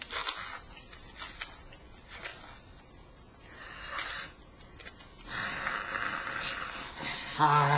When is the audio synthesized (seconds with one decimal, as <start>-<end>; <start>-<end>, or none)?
none